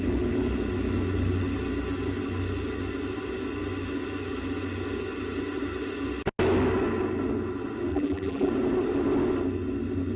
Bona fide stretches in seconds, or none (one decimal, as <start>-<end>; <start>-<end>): 0.0-7.9; 8.5-10.2